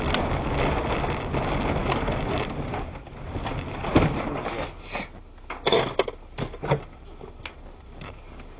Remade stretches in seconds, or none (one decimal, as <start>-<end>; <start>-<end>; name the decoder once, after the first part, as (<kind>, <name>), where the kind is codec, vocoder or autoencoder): none